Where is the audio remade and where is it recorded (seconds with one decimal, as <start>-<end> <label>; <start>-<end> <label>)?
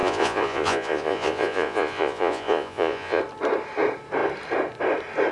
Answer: 0.0-3.2 remade; 3.2-5.3 recorded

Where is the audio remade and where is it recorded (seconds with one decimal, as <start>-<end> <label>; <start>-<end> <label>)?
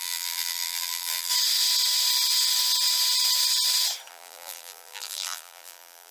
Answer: 0.0-1.3 remade; 1.3-4.1 recorded; 4.1-6.1 remade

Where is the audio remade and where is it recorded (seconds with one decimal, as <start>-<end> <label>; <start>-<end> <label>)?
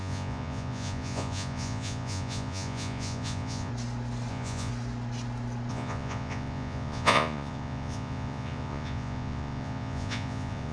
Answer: 0.0-3.7 remade; 3.7-4.3 recorded; 4.3-4.7 remade; 4.7-5.7 recorded; 5.7-10.7 remade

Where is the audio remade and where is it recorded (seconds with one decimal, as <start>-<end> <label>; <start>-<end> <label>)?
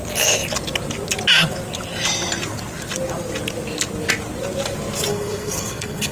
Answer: 0.0-5.1 recorded; 5.1-6.1 remade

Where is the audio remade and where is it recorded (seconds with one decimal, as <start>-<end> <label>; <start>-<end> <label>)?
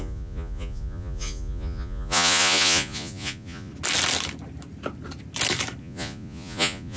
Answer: 0.0-3.7 remade; 3.7-5.8 recorded; 5.8-7.0 remade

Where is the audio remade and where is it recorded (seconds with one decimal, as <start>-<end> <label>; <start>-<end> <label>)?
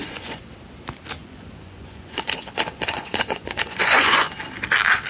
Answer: 0.0-0.5 remade; 0.5-1.2 recorded; 1.2-4.3 remade; 4.3-5.1 recorded